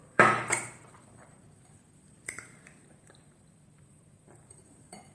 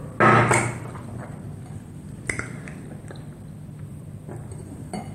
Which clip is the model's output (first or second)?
first